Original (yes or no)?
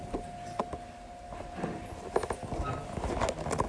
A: yes